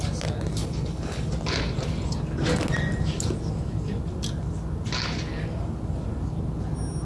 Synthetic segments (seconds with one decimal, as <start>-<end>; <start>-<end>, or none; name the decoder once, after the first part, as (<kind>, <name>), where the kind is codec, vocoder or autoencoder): 0.6-1.3 (codec, HILCodec)